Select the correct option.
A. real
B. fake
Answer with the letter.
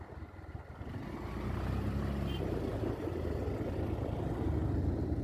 A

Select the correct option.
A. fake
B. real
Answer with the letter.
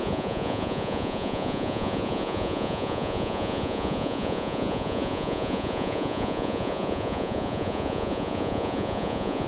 A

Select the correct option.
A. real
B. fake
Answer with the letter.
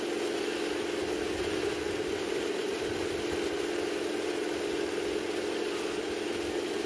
A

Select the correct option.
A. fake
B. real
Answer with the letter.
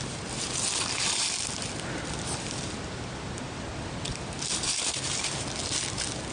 B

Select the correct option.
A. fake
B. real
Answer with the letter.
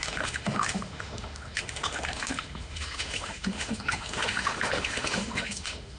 A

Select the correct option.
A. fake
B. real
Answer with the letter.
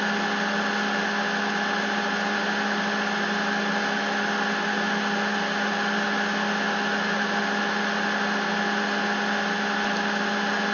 B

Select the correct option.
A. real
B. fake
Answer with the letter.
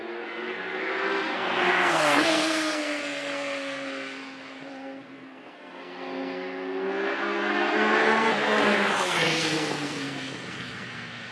B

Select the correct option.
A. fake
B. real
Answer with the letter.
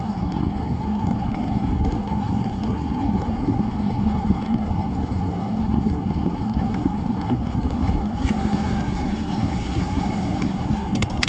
A